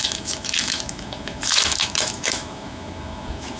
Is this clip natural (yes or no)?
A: no